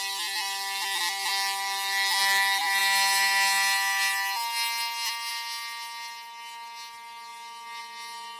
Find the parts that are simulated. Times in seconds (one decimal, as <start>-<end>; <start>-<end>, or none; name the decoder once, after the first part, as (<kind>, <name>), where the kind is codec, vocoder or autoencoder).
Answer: none